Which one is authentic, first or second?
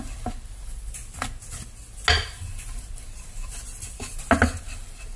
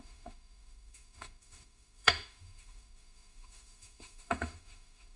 first